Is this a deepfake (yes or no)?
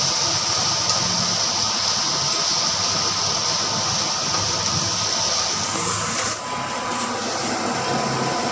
no